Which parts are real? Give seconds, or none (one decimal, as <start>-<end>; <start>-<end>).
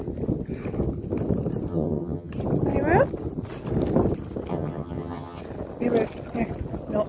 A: 0.0-1.7; 2.3-4.5; 5.4-7.1